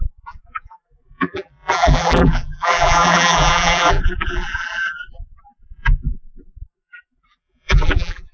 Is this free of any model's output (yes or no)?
no